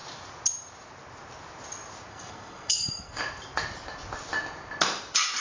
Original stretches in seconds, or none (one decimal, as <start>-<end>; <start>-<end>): 0.0-2.1; 3.2-5.4